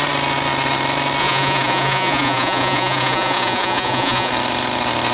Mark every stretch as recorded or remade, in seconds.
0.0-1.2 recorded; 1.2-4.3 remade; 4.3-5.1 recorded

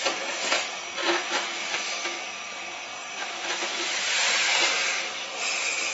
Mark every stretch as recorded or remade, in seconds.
0.0-1.0 recorded; 1.0-2.2 remade; 2.2-3.2 recorded; 3.2-4.0 remade; 4.0-5.9 recorded

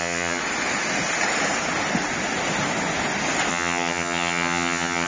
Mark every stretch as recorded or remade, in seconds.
0.0-0.4 remade; 0.4-3.5 recorded; 3.5-5.1 remade

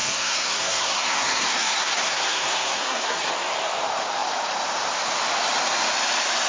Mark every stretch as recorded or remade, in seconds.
0.0-3.3 remade; 3.3-6.5 recorded

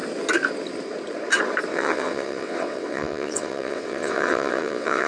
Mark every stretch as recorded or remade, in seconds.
0.0-1.7 recorded; 1.7-5.1 remade

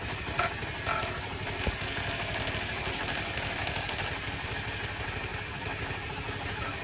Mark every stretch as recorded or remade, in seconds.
0.0-6.8 recorded

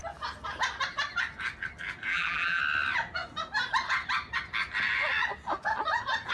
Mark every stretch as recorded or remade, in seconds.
0.0-2.1 recorded; 2.1-2.6 remade; 2.6-6.3 recorded